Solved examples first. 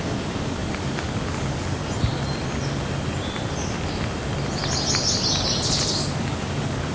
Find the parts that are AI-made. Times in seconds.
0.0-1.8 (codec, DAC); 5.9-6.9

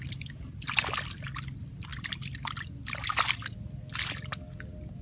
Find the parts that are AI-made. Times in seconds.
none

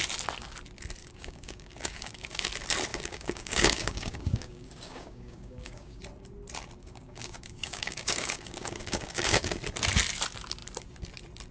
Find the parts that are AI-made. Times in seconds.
1.0-2.5 (codec, DAC); 2.9-6.0; 6.8-9.6